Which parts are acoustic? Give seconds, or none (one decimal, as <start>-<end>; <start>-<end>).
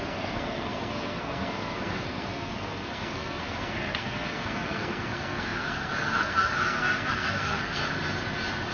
7.8-8.7